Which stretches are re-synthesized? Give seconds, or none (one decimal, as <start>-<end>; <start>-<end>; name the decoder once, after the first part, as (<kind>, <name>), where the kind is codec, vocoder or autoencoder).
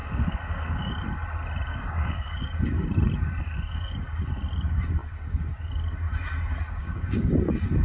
0.0-0.9 (codec, DAC); 1.7-2.6; 6.8-7.3